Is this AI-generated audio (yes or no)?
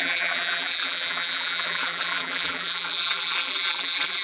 yes